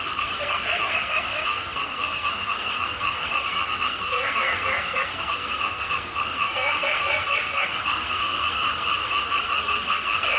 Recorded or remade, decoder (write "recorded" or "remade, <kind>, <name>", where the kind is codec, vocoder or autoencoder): remade, codec, SNAC